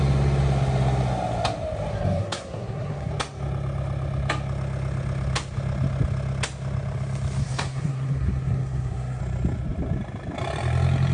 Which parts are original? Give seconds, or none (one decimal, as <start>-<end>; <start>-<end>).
0.0-1.9; 3.1-7.4; 9.2-11.1